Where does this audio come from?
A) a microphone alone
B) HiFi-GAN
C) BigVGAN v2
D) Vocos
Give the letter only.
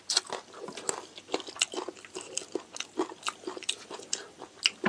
A